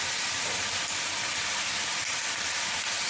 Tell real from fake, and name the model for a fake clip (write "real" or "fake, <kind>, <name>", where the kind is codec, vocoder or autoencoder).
fake, vocoder, BigVGAN v2